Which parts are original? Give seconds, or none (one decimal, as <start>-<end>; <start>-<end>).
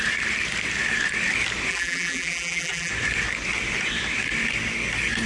0.0-1.7; 2.9-5.3